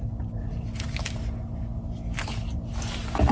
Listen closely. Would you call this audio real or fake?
real